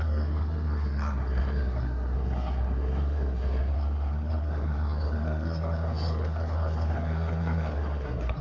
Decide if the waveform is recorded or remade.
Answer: remade